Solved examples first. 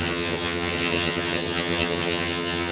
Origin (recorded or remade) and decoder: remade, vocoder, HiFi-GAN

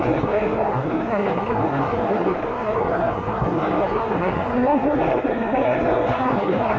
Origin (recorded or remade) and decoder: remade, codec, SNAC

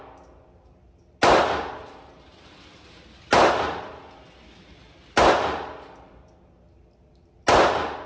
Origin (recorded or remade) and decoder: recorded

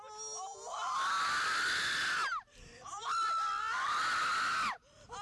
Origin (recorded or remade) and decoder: recorded